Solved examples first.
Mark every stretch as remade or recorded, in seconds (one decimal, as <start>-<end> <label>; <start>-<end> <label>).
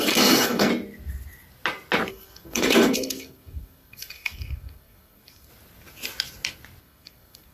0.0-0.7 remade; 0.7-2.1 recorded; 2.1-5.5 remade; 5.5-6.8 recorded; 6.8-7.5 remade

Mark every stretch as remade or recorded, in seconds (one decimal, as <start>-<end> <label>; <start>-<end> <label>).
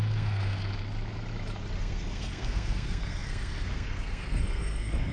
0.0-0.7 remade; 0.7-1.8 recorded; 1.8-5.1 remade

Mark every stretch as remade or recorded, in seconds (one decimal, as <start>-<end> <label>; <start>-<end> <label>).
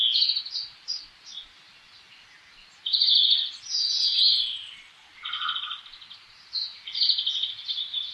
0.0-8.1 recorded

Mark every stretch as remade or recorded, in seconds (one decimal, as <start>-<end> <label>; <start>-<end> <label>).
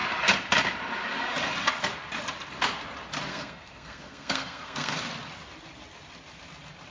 0.0-3.3 recorded; 3.3-5.0 remade; 5.0-6.9 recorded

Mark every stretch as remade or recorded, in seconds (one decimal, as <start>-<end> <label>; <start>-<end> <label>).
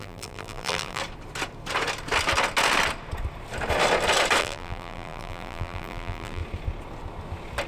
0.0-1.0 remade; 1.0-4.4 recorded; 4.4-6.4 remade; 6.4-7.7 recorded